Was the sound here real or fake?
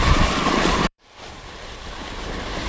fake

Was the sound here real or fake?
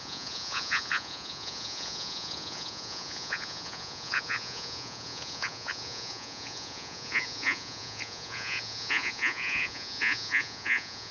fake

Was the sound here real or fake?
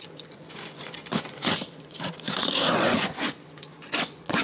fake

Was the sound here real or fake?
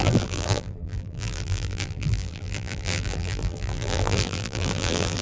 fake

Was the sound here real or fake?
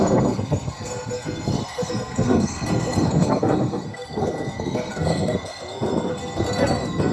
fake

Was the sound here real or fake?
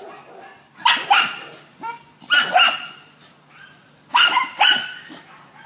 real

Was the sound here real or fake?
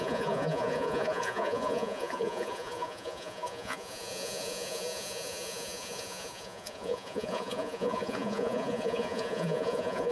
fake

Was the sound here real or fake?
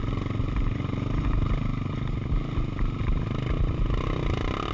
real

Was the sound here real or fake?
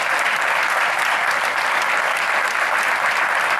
real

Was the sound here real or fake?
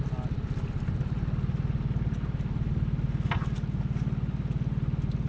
real